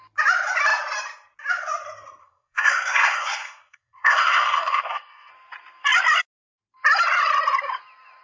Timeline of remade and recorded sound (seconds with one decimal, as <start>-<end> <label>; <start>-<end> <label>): 0.0-2.2 recorded; 2.2-5.3 remade; 5.3-8.2 recorded